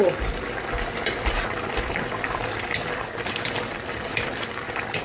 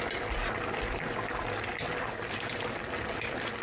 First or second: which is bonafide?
second